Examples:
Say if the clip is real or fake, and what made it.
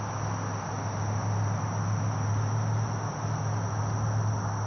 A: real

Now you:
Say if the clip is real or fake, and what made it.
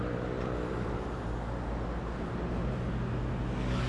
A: real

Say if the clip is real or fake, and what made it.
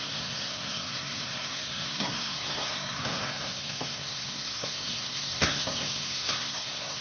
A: fake, codec, SNAC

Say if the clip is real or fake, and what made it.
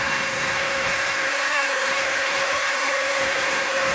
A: fake, codec, SNAC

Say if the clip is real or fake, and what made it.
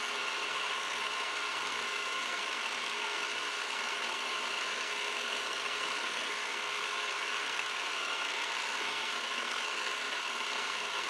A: fake, codec, SNAC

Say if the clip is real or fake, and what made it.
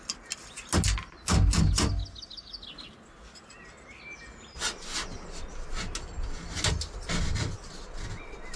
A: real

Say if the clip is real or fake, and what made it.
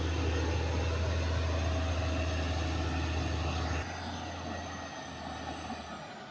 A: real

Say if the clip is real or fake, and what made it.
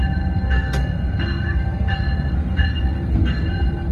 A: fake, codec, SNAC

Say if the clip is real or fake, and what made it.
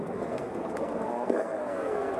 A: fake, codec, SNAC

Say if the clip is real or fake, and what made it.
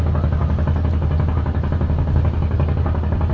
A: real